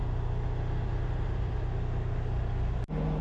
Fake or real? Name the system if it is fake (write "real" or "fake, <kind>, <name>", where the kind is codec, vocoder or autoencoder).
real